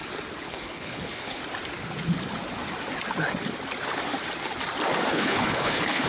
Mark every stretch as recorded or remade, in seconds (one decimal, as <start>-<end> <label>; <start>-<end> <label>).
0.0-0.5 recorded; 0.5-1.4 remade; 1.4-5.1 recorded; 5.1-6.1 remade

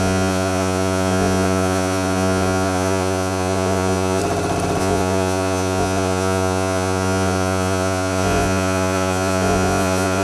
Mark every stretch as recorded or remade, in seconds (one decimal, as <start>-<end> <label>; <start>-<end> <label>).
0.0-4.2 remade; 4.2-4.8 recorded; 4.8-10.2 remade

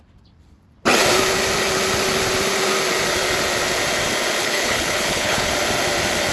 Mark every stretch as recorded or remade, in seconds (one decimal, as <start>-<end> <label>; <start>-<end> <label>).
0.0-4.4 recorded; 4.4-5.5 remade; 5.5-6.3 recorded

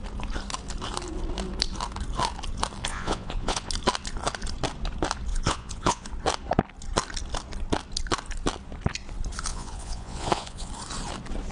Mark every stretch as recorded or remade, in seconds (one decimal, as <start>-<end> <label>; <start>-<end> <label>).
0.0-2.9 recorded; 2.9-3.7 remade; 3.7-5.3 recorded; 5.3-6.1 remade; 6.1-9.5 recorded; 9.5-10.7 remade; 10.7-11.5 recorded